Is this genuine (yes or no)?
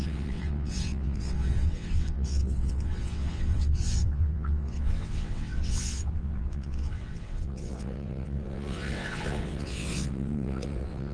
no